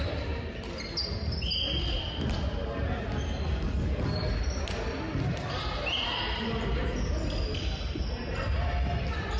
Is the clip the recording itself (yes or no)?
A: yes